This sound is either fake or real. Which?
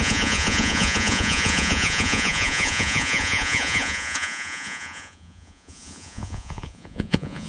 fake